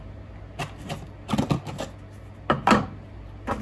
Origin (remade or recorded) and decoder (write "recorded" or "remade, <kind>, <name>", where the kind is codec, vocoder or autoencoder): recorded